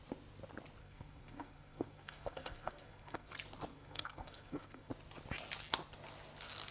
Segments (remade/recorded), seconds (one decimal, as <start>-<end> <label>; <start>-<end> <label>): 0.0-0.8 recorded; 0.8-3.3 remade; 3.3-3.7 recorded; 3.7-4.9 remade; 4.9-6.7 recorded